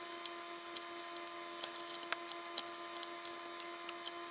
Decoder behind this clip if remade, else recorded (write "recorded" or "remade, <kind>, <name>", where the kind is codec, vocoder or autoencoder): recorded